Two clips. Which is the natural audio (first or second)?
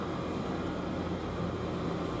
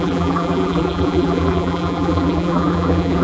first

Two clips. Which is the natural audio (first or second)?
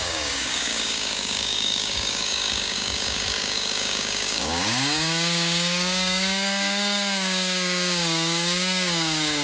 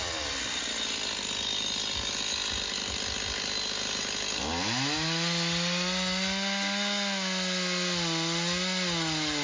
second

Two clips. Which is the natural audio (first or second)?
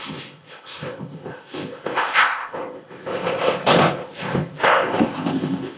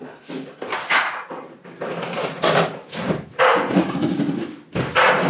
second